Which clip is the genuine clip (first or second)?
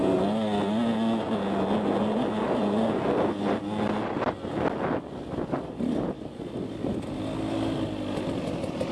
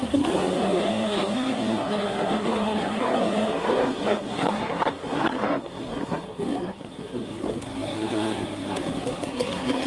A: first